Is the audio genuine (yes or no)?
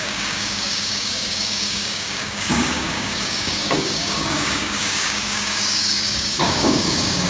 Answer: no